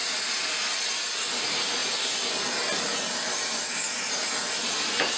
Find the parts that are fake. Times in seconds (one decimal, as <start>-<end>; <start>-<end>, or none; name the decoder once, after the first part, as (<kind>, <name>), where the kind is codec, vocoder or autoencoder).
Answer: none